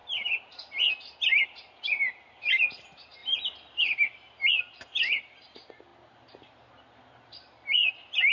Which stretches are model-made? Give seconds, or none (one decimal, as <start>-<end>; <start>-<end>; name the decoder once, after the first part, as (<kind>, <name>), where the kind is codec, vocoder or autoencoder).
none